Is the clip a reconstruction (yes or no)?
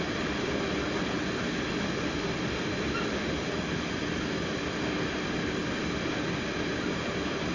no